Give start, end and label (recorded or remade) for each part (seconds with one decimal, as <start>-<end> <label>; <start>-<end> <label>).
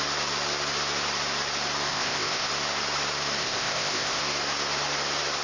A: 0.0-1.9 recorded; 1.9-2.5 remade; 2.5-3.4 recorded; 3.4-4.2 remade; 4.2-5.4 recorded